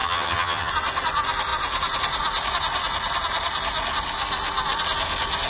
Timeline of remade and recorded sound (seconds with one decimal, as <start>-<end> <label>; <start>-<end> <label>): 0.0-0.7 remade; 0.7-5.5 recorded